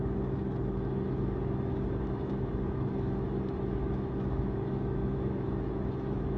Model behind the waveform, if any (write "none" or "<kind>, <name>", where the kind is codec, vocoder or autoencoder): autoencoder, DAC-VAE